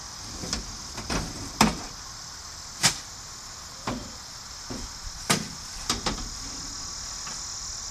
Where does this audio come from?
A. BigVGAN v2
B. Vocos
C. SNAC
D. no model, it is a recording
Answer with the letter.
A